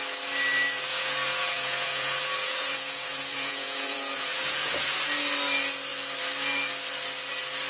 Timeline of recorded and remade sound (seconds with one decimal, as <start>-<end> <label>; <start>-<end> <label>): 0.0-0.9 recorded; 0.9-5.0 remade; 5.0-7.7 recorded

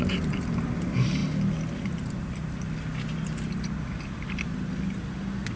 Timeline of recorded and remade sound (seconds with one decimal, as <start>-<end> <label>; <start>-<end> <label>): 0.0-5.6 recorded

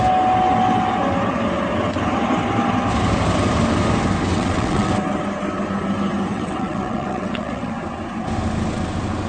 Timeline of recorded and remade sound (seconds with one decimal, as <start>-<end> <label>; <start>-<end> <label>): 0.0-4.3 recorded; 4.3-4.9 remade; 4.9-6.3 recorded; 6.3-7.7 remade; 7.7-9.3 recorded